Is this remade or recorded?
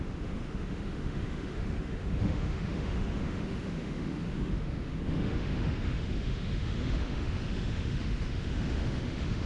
remade